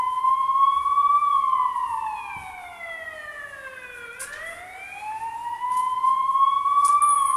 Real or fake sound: real